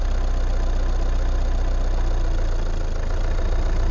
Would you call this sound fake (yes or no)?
no